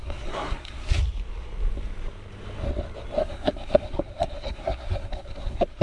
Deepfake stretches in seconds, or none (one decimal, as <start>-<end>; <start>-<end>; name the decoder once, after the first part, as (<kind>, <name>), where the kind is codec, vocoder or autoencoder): 0.0-1.0 (codec, SNAC); 3.2-5.8